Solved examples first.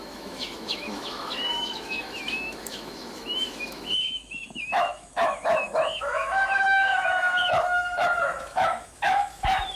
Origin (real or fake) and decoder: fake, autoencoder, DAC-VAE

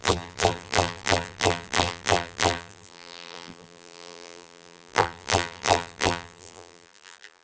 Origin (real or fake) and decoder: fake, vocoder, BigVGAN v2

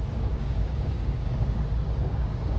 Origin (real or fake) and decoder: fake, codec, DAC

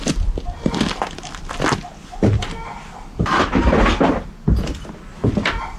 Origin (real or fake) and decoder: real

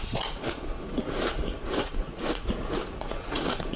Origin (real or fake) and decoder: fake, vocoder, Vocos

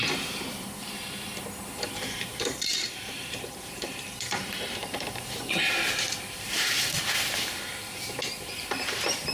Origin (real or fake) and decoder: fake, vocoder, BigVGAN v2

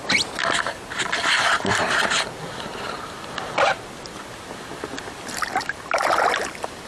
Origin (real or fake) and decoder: fake, vocoder, BigVGAN v2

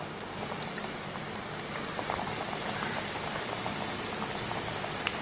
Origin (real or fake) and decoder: real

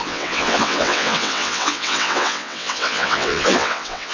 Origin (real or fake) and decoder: fake, vocoder, WaveNeXt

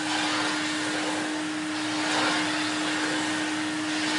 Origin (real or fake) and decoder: real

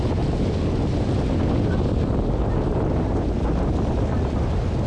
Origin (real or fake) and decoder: real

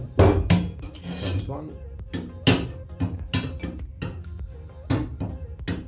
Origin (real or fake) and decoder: real